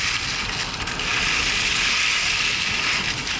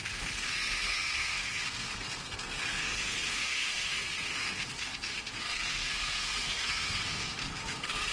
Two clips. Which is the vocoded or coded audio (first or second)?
second